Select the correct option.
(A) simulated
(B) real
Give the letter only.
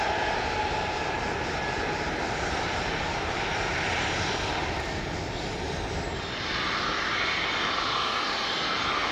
B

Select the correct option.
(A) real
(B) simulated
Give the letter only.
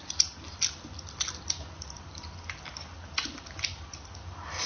A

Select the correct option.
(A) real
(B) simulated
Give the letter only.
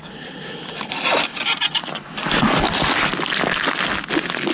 A